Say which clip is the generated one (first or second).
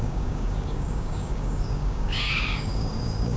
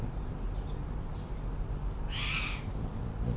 first